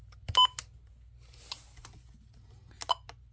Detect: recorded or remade recorded